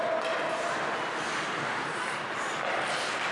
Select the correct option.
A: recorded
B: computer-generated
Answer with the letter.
A